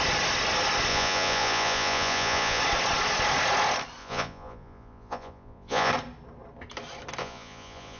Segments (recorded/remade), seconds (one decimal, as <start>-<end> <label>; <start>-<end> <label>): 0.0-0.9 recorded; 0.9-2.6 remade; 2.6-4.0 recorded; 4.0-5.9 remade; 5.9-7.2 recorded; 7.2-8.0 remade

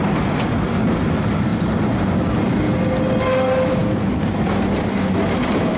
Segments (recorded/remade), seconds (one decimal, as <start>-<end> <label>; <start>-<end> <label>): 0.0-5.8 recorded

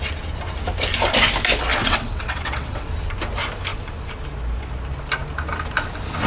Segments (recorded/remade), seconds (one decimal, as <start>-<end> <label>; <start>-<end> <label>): 0.0-1.8 recorded; 1.8-2.9 remade; 2.9-6.3 recorded